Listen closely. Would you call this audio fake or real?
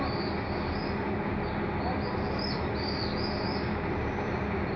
real